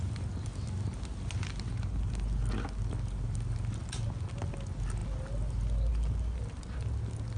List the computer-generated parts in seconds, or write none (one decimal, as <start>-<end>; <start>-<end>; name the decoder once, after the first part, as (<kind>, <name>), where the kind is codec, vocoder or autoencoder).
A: none